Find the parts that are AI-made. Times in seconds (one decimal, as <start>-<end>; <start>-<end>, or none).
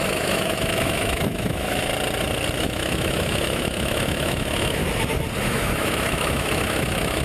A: 0.0-1.9; 2.6-4.8; 5.4-7.2